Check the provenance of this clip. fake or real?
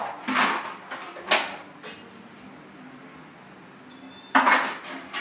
real